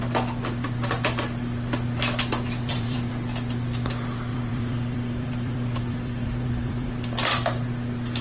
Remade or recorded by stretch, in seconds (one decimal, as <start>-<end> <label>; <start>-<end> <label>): 0.0-2.6 recorded; 2.6-3.1 remade; 3.1-4.3 recorded; 4.3-6.9 remade; 6.9-8.2 recorded